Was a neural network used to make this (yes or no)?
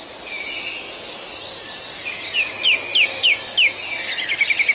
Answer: no